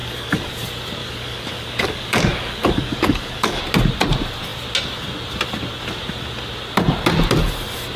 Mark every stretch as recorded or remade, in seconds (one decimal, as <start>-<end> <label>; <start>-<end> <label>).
0.0-0.6 remade; 0.6-1.0 recorded; 1.0-3.6 remade; 3.6-8.0 recorded